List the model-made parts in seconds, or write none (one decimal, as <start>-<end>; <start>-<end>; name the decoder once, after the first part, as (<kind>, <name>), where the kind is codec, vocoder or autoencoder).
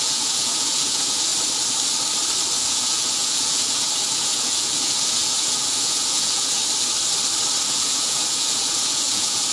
0.0-1.3 (vocoder, Vocos); 2.6-6.6; 7.7-9.5